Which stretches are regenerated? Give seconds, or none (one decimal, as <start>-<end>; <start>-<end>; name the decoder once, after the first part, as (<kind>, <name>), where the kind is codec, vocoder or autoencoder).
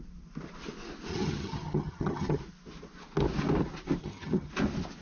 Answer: 1.1-2.4 (vocoder, HiFi-GAN); 4.0-4.5